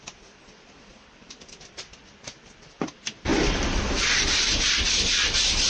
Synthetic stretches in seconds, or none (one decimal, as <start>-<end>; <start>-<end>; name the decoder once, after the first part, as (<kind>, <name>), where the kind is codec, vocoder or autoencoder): 0.0-5.7 (vocoder, BigVGAN v2)